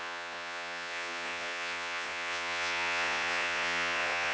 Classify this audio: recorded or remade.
remade